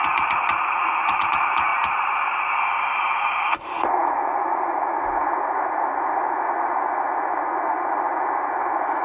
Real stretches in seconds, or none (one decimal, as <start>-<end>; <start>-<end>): 1.7-3.5